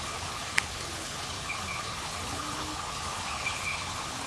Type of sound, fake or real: fake